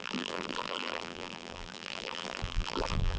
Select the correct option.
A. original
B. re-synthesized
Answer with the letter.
B